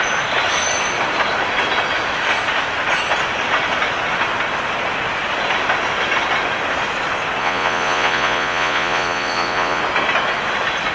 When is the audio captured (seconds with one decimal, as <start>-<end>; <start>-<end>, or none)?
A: 0.0-7.4; 9.8-10.9